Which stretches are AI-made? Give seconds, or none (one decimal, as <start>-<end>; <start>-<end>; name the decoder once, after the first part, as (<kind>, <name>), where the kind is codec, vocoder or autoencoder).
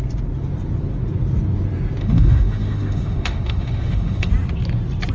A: 2.0-4.3 (autoencoder, DAC-VAE)